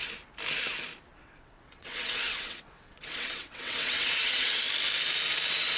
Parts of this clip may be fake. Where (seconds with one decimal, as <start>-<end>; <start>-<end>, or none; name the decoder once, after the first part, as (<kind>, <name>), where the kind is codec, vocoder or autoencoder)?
1.1-4.6 (vocoder, WaveNeXt)